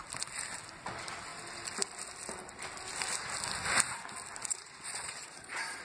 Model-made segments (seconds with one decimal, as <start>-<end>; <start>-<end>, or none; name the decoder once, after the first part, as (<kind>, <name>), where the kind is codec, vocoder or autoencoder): 4.5-5.8 (vocoder, Vocos)